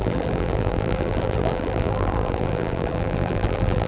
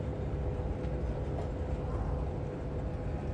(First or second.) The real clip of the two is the second